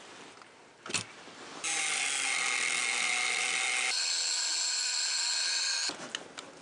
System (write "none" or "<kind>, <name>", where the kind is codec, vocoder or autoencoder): none